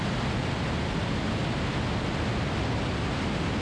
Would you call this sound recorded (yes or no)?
yes